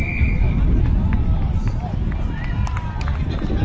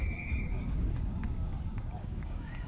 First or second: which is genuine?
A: first